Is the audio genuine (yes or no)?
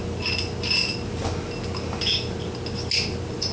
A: yes